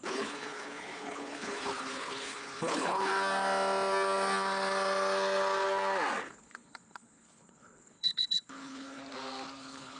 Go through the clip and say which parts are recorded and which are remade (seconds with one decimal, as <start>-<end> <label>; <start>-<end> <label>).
0.0-3.1 remade; 3.1-6.2 recorded; 6.2-9.0 remade; 9.0-9.6 recorded; 9.6-10.0 remade